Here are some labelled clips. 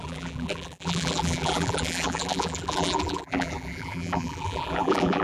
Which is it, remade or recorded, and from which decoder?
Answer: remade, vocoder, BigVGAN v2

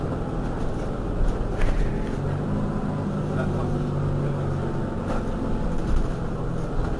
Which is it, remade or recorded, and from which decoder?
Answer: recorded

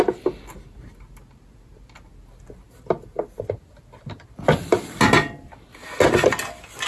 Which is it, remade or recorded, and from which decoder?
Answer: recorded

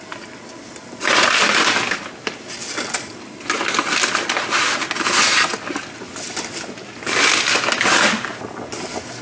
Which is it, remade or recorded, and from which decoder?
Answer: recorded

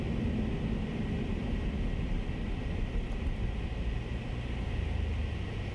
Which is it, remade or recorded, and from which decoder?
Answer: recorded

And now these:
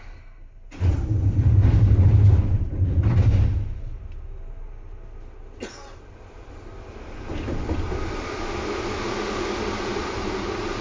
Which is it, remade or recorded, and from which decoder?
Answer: recorded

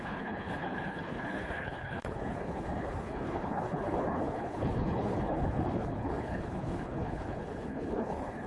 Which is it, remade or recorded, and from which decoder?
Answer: remade, codec, HILCodec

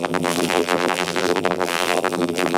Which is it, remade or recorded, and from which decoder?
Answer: remade, vocoder, BigVGAN v2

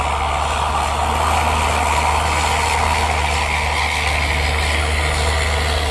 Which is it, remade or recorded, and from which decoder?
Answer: recorded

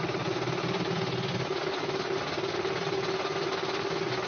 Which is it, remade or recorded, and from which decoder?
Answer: recorded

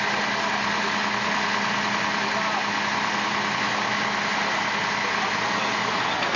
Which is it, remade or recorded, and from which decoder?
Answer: recorded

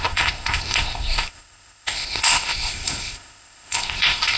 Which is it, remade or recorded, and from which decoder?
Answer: remade, codec, ZipCodec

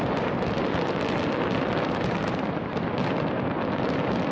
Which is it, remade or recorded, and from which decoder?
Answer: recorded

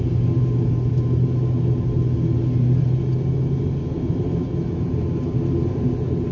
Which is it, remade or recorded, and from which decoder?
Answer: recorded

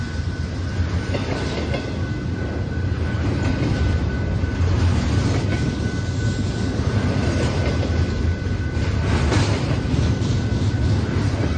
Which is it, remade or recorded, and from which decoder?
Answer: recorded